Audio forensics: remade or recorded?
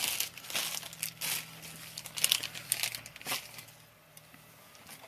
recorded